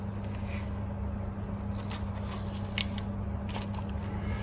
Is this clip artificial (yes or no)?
no